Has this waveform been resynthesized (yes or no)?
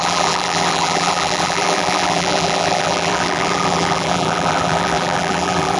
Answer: yes